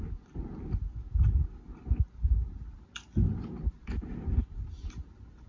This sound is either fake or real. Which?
real